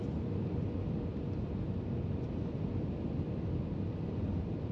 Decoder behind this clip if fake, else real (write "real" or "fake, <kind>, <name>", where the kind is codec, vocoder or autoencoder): real